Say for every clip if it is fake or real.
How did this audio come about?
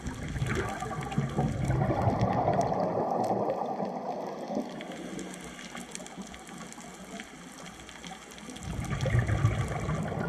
real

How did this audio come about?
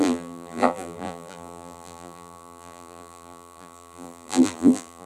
fake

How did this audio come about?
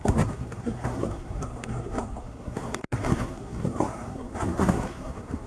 fake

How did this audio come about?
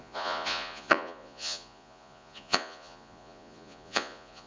fake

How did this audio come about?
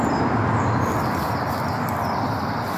real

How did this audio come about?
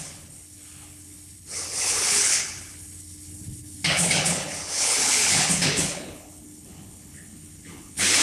fake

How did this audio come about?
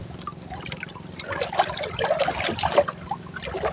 real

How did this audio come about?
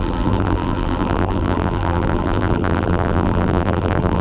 fake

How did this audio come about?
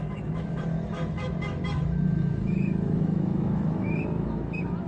fake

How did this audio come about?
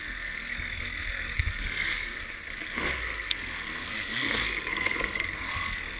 fake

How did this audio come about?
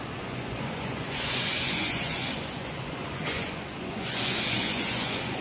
fake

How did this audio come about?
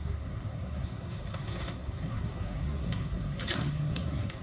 fake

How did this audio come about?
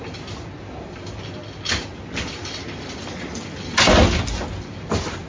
real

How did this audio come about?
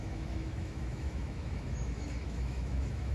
fake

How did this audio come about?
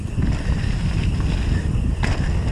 real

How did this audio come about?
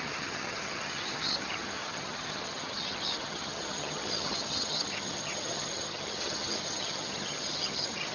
fake